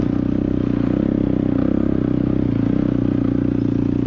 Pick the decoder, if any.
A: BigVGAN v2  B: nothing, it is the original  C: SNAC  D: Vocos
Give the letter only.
B